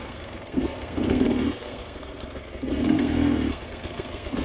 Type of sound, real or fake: fake